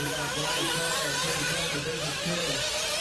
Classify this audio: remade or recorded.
remade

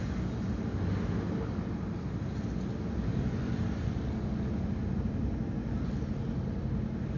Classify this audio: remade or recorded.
recorded